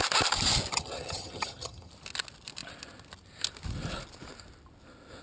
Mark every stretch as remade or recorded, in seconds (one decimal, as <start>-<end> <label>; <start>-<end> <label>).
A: 0.0-0.7 recorded; 0.7-1.9 remade; 1.9-5.2 recorded